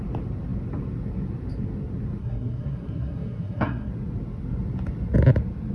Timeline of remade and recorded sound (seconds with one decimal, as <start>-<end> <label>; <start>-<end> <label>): 0.0-2.2 recorded; 2.2-3.9 remade; 3.9-5.7 recorded